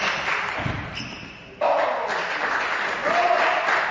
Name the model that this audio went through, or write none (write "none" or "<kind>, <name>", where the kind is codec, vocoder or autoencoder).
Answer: none